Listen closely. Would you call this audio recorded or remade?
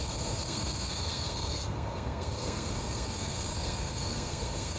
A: remade